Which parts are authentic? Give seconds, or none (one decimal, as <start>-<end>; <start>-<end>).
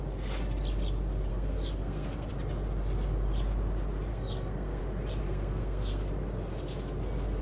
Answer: 0.0-1.3; 2.3-4.1; 4.8-5.2; 6.1-7.4